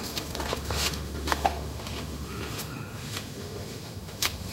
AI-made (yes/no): yes